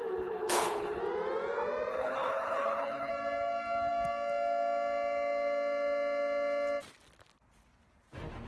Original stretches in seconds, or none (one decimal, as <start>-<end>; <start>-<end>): 1.0-1.9; 3.1-8.5